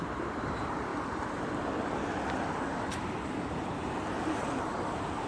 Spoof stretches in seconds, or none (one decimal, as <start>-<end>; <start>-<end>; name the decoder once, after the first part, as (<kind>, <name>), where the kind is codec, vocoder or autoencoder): 0.0-0.9 (vocoder, BigVGAN v2); 3.5-5.3

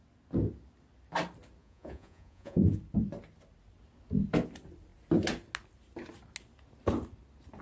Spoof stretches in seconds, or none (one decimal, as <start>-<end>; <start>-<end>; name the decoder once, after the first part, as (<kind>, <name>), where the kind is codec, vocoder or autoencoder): 1.6-2.8 (vocoder, Vocos)

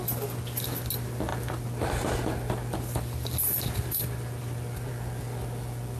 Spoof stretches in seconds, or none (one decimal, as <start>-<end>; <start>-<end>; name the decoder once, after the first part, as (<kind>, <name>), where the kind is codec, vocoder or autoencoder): none